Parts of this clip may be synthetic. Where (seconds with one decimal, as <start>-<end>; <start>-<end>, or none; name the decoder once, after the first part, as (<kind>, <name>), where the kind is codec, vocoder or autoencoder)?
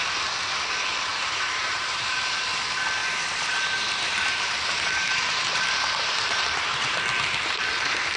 1.1-2.4 (vocoder, BigVGAN v2); 3.0-7.0